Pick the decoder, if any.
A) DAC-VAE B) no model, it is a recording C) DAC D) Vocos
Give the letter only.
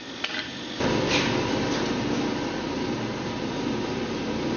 B